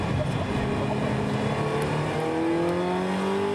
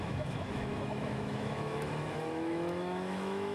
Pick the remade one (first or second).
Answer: second